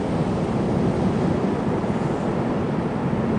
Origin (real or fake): real